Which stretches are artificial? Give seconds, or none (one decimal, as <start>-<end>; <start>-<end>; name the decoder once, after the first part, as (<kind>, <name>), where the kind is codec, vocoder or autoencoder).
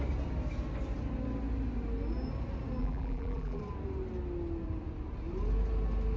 2.8-3.6 (vocoder, BigVGAN v2)